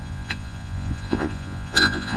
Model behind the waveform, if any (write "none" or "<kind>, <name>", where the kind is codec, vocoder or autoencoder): vocoder, Vocos